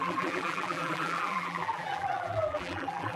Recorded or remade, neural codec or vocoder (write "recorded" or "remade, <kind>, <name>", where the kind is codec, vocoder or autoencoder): remade, vocoder, BigVGAN v2